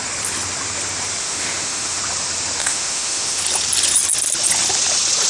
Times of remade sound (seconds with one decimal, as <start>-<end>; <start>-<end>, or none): 1.2-2.0; 2.6-3.4

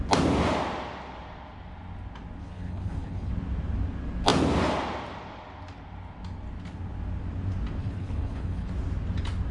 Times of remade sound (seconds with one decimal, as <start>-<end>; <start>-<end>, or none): 2.4-3.3; 7.8-8.7

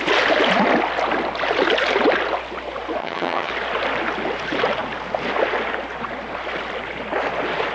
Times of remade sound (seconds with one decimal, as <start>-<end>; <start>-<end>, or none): 3.0-3.5

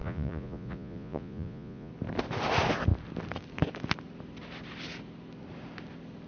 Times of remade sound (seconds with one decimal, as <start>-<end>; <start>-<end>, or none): 0.0-1.9

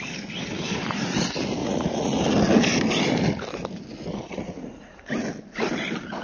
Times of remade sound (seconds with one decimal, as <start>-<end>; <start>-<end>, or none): 1.6-2.2; 4.3-5.0

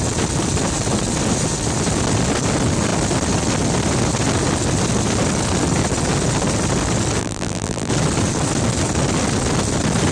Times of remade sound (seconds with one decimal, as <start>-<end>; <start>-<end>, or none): 7.2-7.9

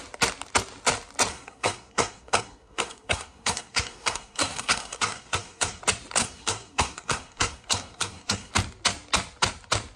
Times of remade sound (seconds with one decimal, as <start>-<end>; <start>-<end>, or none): 1.3-5.8; 6.2-8.5